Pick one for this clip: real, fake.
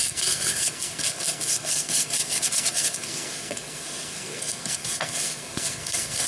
fake